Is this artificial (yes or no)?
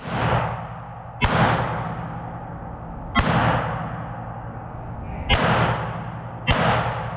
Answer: no